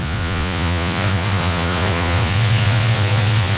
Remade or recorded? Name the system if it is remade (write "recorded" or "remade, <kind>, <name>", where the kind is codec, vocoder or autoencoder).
remade, vocoder, Vocos